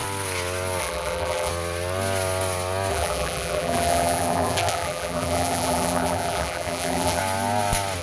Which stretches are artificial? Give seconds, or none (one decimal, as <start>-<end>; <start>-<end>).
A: 0.8-1.5; 2.9-7.2